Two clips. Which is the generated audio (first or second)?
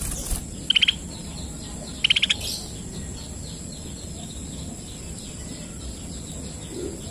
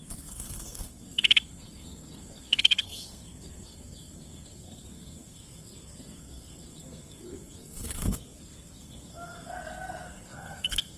second